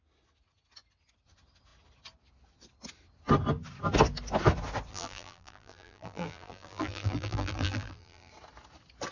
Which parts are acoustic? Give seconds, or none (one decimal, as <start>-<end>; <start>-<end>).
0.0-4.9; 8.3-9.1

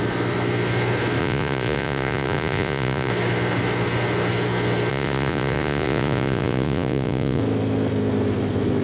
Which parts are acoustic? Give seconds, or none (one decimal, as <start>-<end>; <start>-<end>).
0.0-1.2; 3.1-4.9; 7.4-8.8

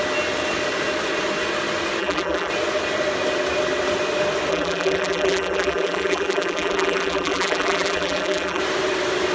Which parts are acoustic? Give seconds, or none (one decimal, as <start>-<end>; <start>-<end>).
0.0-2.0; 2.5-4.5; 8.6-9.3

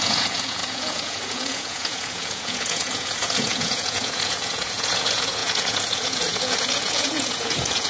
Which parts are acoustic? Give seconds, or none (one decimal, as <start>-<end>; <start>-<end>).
none